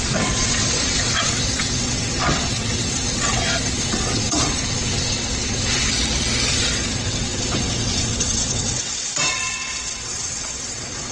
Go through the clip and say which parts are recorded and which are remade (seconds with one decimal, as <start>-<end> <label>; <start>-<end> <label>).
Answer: 0.0-5.9 remade; 5.9-6.5 recorded; 6.5-11.1 remade